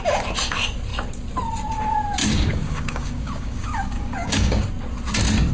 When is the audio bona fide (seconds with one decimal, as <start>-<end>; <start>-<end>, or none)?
0.0-2.2; 4.7-5.5